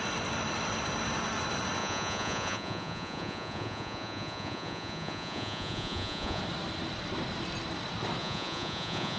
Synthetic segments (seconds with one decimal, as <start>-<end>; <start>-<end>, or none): 1.8-6.4; 8.2-9.2